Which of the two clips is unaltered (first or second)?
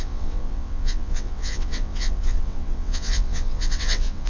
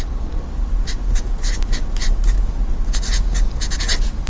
second